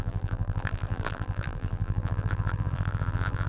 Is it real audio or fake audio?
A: fake